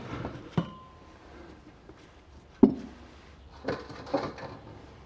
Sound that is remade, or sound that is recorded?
recorded